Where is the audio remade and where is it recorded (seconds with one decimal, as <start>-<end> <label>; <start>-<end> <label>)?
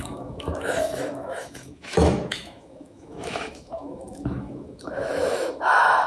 0.0-6.1 remade